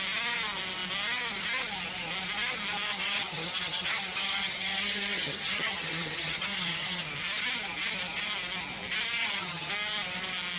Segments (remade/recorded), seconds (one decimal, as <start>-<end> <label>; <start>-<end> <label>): 0.0-2.9 recorded; 2.9-7.0 remade; 7.0-9.2 recorded; 9.2-9.7 remade; 9.7-10.6 recorded